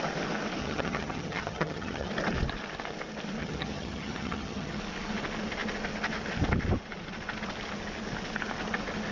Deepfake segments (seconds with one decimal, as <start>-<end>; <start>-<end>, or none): 0.6-2.1; 3.4-4.8